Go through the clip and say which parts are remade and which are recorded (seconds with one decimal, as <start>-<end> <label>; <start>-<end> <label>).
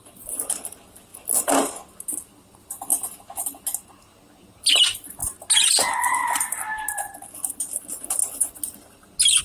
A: 0.0-9.4 recorded